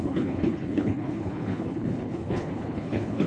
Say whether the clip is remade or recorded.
remade